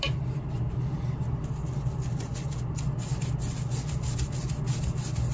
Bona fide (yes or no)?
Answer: yes